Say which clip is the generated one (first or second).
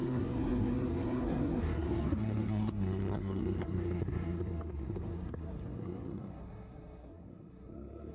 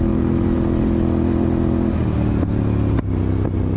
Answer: first